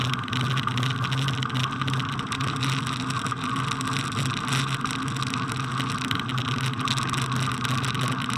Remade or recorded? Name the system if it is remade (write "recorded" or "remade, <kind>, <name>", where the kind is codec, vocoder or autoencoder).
recorded